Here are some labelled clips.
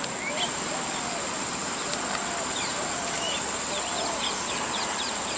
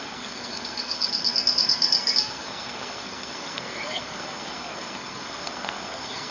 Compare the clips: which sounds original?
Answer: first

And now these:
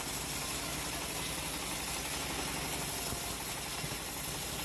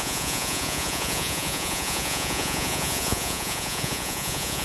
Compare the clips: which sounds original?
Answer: first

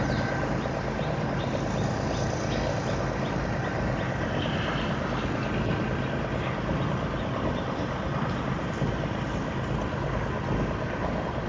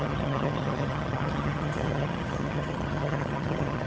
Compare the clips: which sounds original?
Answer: first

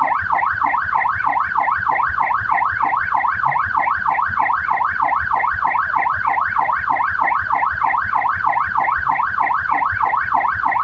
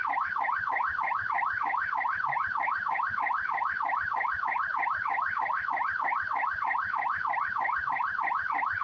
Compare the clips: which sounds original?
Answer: first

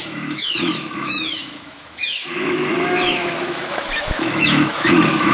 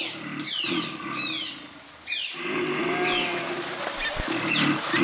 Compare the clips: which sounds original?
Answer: second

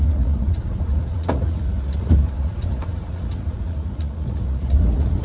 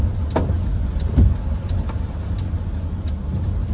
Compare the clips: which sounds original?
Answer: second